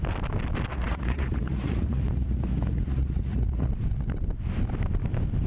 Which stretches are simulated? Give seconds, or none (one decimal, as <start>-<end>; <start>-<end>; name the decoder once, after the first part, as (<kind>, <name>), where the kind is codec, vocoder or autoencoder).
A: 0.7-3.7 (vocoder, Vocos)